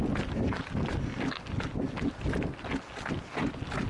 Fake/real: real